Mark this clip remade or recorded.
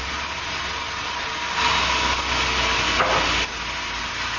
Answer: recorded